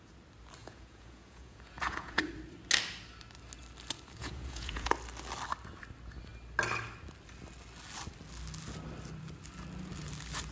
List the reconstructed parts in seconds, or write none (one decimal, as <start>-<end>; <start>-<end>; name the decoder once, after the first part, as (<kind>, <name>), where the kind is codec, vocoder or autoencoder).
0.6-2.2 (vocoder, Vocos); 4.2-4.9